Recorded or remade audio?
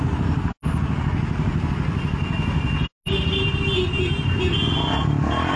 recorded